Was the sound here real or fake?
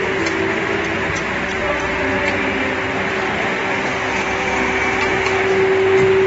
real